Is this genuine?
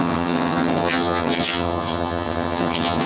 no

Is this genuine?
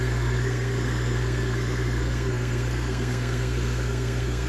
no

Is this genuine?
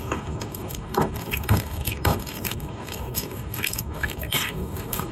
no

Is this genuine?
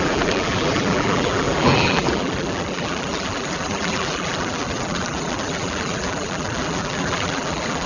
no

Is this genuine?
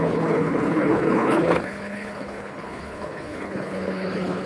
no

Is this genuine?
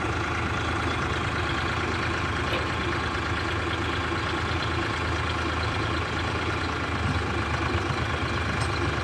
yes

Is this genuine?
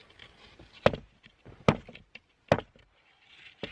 yes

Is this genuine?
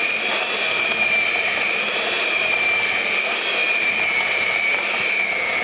no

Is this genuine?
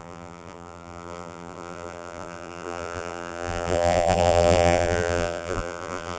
no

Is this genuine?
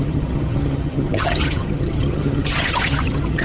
no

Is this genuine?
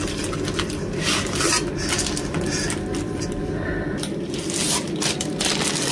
yes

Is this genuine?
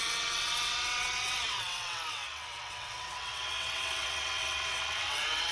no